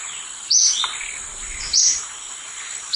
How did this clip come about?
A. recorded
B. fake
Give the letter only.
A